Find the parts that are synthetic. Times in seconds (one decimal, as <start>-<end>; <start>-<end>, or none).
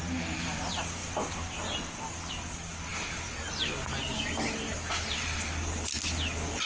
none